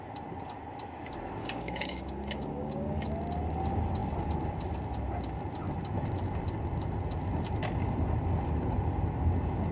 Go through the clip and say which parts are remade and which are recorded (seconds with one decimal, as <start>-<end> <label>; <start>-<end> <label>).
0.0-1.4 recorded; 1.4-3.1 remade; 3.1-9.7 recorded